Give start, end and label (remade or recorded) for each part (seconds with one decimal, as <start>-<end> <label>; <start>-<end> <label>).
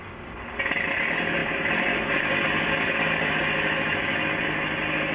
0.0-5.1 recorded